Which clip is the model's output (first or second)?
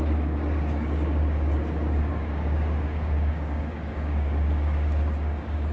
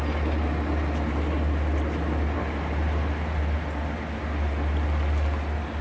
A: first